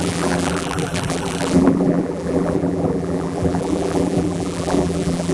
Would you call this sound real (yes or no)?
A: no